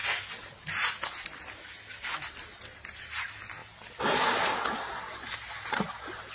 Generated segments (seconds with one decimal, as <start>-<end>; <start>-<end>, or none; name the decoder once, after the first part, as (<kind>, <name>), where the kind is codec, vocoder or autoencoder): none